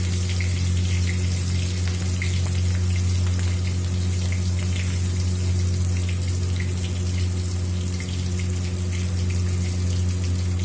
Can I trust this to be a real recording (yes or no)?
yes